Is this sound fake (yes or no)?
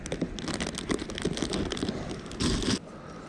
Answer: no